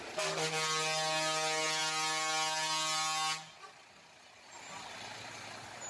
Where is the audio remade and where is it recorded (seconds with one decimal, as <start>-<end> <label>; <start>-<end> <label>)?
0.0-5.9 recorded